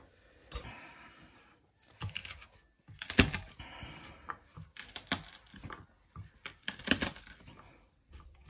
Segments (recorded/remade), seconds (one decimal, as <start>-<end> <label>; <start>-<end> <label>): 0.0-8.5 recorded